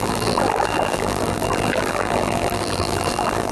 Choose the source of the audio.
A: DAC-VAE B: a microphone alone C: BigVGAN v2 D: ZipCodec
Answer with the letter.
C